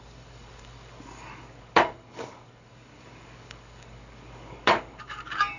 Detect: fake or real fake